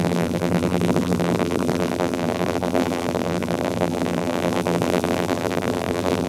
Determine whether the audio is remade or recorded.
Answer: remade